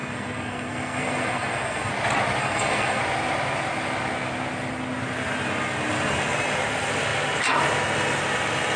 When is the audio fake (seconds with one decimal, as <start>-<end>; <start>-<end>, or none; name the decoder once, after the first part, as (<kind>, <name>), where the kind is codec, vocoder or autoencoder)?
0.0-1.9 (codec, SNAC); 2.4-3.0